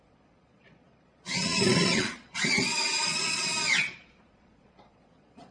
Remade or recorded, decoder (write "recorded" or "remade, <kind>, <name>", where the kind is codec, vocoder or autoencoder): remade, vocoder, Vocos